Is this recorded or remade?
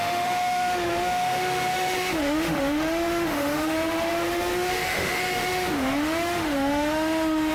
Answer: remade